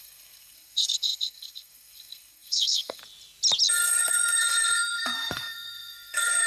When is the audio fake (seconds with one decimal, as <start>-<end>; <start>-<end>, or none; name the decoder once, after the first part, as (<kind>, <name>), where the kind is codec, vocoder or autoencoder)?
0.0-3.0 (codec, SNAC); 3.7-6.5